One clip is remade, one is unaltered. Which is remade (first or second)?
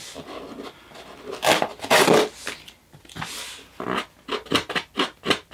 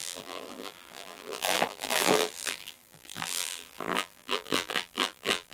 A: second